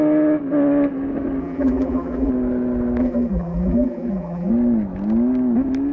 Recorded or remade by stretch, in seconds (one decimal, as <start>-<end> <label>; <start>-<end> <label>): 0.0-1.4 recorded; 1.4-2.3 remade; 2.3-3.0 recorded; 3.0-4.5 remade; 4.5-5.9 recorded